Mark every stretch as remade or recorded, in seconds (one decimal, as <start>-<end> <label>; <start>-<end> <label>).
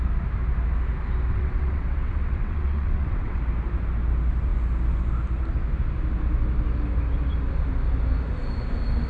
0.0-1.3 recorded; 1.3-3.4 remade; 3.4-9.1 recorded